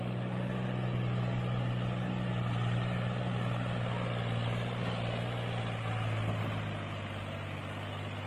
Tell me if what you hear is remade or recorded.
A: recorded